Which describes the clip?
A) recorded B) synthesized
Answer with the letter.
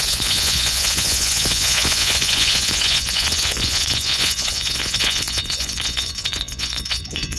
B